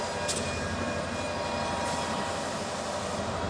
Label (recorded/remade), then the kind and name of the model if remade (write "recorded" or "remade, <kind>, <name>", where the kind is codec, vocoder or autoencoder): recorded